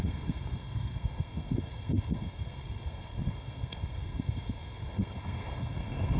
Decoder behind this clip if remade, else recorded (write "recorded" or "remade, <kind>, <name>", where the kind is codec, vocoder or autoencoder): remade, codec, SNAC